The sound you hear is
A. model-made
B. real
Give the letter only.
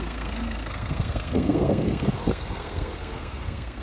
A